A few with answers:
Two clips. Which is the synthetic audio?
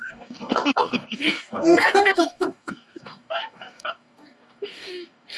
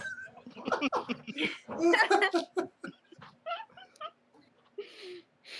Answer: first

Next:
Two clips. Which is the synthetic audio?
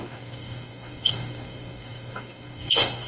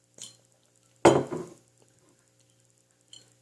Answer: first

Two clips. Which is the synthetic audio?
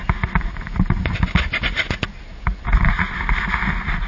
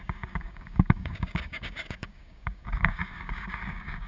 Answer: second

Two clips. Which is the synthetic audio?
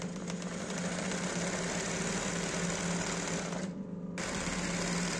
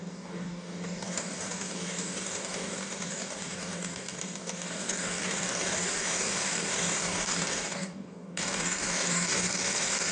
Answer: second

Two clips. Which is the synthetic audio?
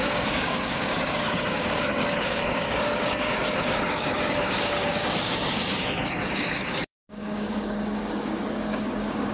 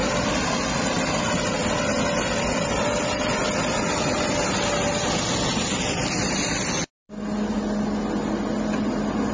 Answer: first